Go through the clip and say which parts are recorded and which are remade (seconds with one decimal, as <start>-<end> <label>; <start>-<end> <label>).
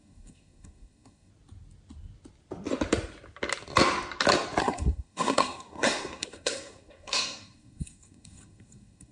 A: 0.0-1.3 remade; 1.3-4.6 recorded; 4.6-9.1 remade